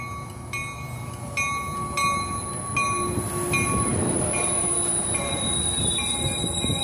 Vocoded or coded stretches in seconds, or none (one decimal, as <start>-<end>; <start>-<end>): 3.9-6.8